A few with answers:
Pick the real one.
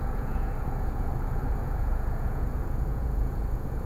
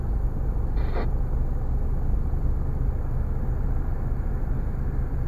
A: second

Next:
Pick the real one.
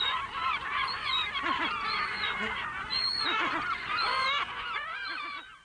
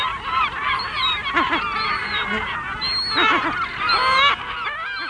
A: second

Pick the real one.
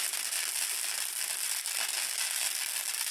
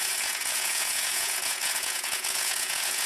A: first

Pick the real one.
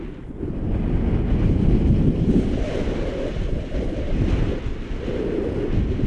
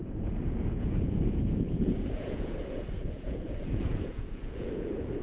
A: first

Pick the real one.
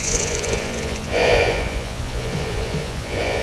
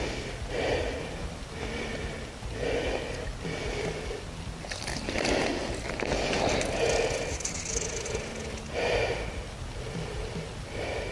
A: second